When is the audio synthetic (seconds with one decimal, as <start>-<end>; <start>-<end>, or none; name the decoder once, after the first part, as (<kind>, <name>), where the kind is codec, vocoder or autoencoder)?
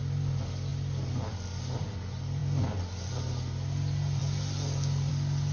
none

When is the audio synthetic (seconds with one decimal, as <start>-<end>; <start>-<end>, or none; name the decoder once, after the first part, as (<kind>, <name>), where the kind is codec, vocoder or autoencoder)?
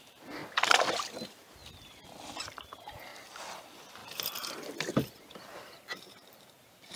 0.0-0.4 (vocoder, BigVGAN v2); 0.9-1.6; 2.5-3.1; 3.6-7.0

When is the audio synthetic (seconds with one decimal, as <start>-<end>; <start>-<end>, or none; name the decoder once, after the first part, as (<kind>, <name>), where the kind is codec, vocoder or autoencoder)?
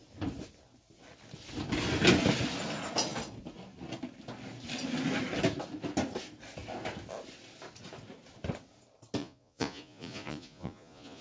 9.2-11.2 (vocoder, Vocos)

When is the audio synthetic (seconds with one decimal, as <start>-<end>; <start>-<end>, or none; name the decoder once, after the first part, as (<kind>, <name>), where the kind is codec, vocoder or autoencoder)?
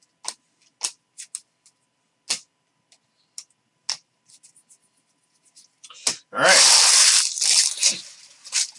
none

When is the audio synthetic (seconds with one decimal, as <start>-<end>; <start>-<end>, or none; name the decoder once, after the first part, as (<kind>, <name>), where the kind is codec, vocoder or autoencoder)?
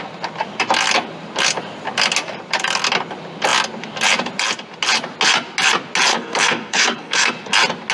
6.1-7.3 (codec, SNAC)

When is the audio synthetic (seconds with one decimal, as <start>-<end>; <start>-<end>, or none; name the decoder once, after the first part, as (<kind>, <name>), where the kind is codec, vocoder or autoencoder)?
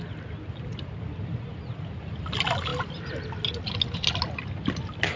none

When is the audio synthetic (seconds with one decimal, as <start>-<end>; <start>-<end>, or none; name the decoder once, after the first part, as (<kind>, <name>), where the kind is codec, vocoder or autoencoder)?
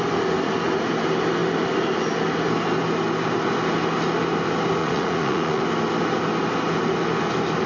4.8-5.6 (vocoder, Vocos)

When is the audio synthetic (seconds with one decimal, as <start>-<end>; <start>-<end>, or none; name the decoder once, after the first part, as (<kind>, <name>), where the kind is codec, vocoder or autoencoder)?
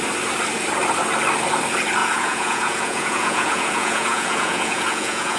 2.0-5.4 (vocoder, Vocos)